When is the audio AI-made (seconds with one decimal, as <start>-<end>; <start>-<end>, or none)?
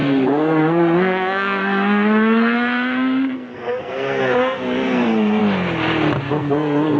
0.0-5.4; 6.3-7.0